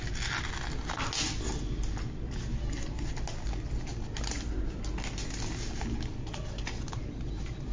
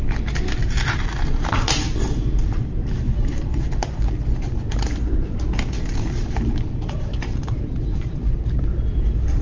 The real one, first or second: first